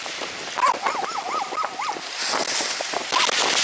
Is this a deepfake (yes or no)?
no